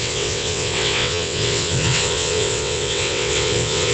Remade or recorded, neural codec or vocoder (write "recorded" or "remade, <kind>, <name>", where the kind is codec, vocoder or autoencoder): remade, vocoder, WaveNeXt